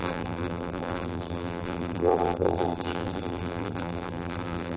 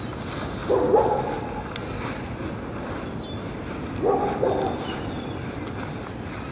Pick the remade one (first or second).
first